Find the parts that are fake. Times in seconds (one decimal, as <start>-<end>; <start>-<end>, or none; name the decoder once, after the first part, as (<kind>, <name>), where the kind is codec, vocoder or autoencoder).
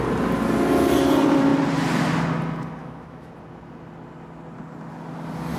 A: 2.8-3.3 (autoencoder, DAC-VAE)